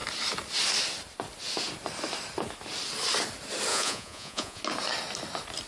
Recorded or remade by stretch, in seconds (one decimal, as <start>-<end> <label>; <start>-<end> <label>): 0.0-3.7 recorded; 3.7-4.6 remade; 4.6-5.7 recorded